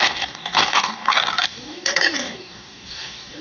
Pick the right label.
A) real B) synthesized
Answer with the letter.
B